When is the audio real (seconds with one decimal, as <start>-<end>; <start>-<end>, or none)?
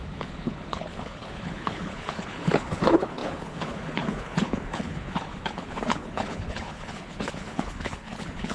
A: none